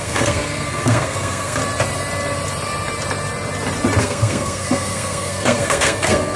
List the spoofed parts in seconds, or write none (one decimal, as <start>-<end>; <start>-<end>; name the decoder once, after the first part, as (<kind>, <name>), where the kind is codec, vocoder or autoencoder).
0.0-1.6 (codec, SNAC); 4.0-6.4